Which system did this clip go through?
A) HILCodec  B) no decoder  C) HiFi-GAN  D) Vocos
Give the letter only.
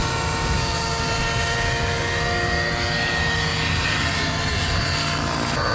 B